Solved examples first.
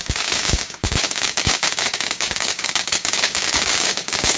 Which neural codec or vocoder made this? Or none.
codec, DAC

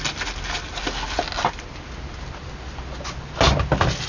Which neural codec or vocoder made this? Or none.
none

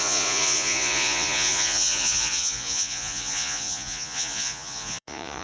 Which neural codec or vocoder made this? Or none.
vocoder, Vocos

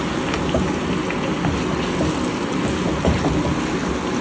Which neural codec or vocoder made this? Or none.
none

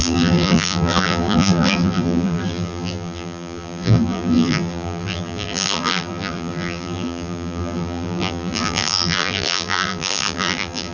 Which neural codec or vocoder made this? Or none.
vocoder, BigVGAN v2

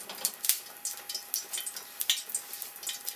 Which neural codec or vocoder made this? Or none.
none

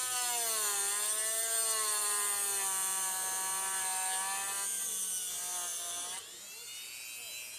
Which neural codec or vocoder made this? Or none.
none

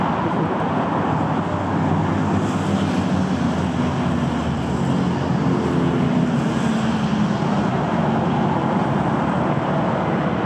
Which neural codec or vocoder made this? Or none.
none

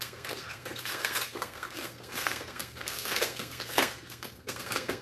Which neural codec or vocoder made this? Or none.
codec, SNAC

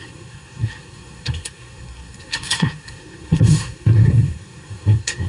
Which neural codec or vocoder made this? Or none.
codec, SNAC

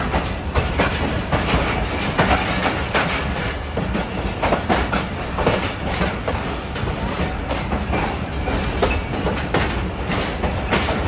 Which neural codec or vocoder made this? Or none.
vocoder, BigVGAN v2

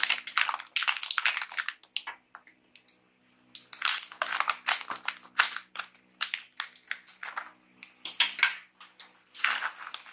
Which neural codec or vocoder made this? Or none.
none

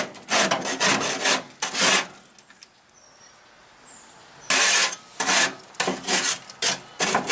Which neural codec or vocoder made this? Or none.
none